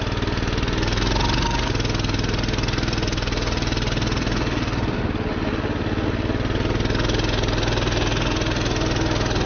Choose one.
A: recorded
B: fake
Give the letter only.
A